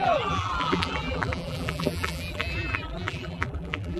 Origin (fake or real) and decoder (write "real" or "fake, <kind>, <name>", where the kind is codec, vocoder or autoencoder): fake, vocoder, BigVGAN v2